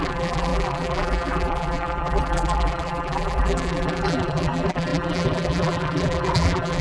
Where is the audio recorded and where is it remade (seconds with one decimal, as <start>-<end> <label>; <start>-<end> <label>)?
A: 0.0-6.8 remade